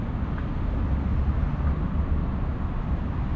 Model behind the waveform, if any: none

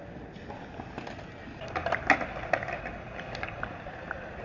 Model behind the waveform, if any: none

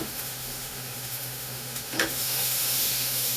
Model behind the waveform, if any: autoencoder, DAC-VAE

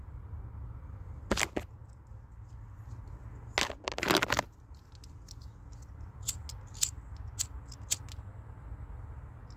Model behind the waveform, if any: none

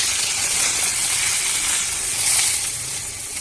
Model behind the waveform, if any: vocoder, WaveNeXt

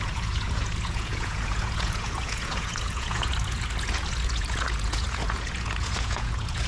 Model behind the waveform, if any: vocoder, Vocos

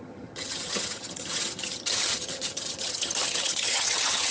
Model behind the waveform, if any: vocoder, HiFi-GAN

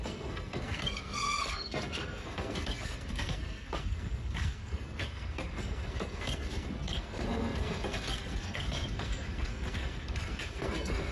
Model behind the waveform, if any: codec, SNAC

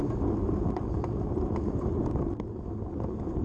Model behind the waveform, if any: none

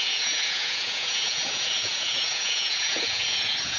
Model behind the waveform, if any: vocoder, Vocos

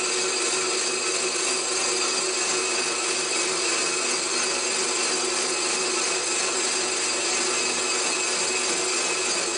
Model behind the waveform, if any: none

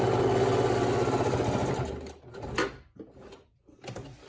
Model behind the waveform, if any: none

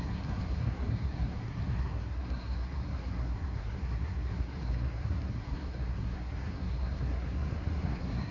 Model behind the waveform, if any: codec, SNAC